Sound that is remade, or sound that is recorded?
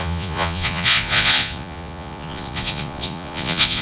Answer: remade